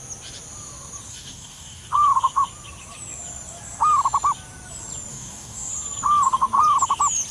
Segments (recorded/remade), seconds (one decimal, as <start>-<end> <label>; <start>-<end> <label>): 0.0-1.1 recorded; 1.1-1.9 remade; 1.9-5.1 recorded; 5.1-5.7 remade; 5.7-7.3 recorded